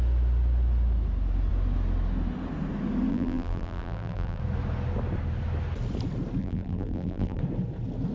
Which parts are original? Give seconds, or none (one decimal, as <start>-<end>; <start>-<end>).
0.0-3.1; 4.4-6.4; 7.4-8.1